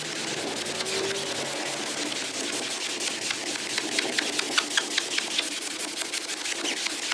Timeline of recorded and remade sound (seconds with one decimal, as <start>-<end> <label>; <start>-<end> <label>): 0.0-7.1 recorded